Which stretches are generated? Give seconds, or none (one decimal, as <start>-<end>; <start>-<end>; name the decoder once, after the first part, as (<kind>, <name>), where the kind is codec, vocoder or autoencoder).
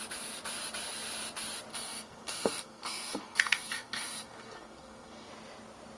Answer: 1.7-5.3 (codec, SNAC)